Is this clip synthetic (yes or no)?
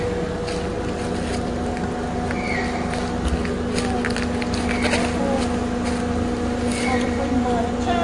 no